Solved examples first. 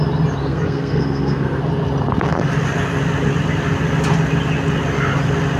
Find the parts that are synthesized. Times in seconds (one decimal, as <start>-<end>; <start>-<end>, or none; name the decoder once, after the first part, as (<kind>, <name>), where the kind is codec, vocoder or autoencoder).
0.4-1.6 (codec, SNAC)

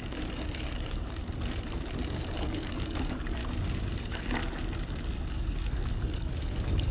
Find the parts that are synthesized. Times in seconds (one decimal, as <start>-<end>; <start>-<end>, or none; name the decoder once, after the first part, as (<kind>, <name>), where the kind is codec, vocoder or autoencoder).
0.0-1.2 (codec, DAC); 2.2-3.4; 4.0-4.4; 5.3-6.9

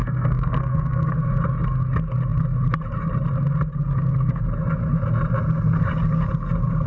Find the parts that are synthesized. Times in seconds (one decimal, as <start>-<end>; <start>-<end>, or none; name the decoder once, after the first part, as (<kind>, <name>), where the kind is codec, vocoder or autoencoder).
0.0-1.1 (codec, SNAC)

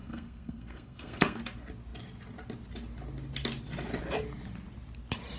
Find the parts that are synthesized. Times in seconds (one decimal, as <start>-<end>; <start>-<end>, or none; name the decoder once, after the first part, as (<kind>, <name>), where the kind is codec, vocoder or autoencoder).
0.0-1.4 (codec, SNAC)